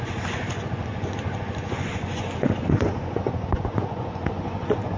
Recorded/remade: remade